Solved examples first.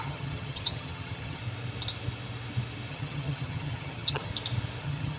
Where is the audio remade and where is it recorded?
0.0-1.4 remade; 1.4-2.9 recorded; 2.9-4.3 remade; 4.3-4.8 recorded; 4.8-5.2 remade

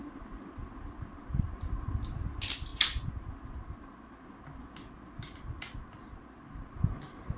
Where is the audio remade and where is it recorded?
0.0-7.4 recorded

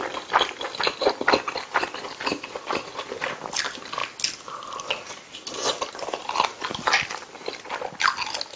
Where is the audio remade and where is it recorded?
0.0-8.6 recorded

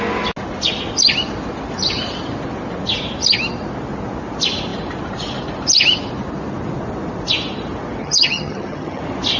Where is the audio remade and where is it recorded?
0.0-8.0 recorded; 8.0-9.0 remade; 9.0-9.4 recorded

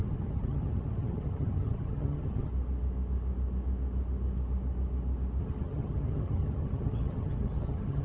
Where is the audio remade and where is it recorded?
0.0-2.5 remade; 2.5-5.4 recorded; 5.4-8.0 remade

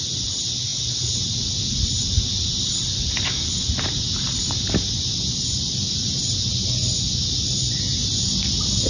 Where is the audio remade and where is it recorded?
0.0-8.9 recorded